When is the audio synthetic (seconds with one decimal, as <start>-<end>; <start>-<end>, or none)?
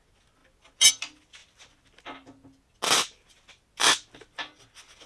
none